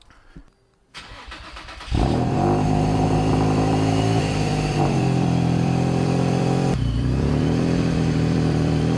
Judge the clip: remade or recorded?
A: remade